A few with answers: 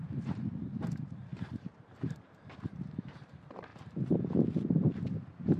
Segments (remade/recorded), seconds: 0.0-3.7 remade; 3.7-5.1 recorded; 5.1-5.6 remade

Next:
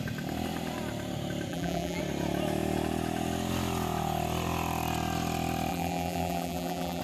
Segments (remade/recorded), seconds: 0.0-1.5 recorded; 1.5-2.0 remade; 2.0-5.7 recorded; 5.7-7.0 remade

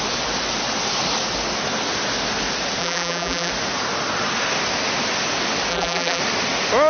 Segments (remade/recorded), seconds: 0.0-2.8 recorded; 2.8-3.5 remade; 3.5-5.7 recorded; 5.7-6.2 remade; 6.2-6.9 recorded

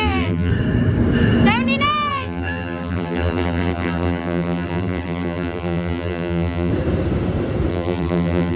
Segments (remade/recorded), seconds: 0.0-0.5 remade; 0.5-2.1 recorded; 2.1-6.7 remade; 6.7-7.7 recorded; 7.7-8.6 remade

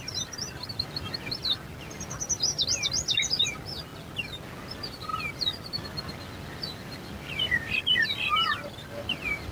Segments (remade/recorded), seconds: 0.0-3.9 remade; 3.9-4.6 recorded; 4.6-9.5 remade